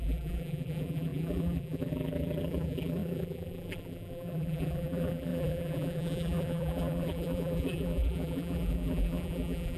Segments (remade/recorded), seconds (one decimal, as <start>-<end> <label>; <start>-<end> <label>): 0.0-9.8 remade